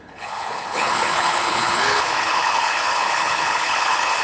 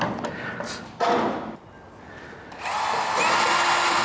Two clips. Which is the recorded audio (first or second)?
second